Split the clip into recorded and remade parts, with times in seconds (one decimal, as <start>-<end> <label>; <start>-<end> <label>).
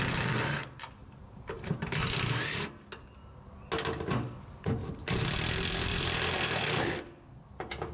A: 0.0-1.0 recorded; 1.0-2.0 remade; 2.0-5.9 recorded; 5.9-6.8 remade; 6.8-7.9 recorded